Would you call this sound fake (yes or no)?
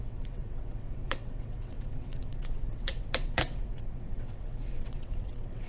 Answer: yes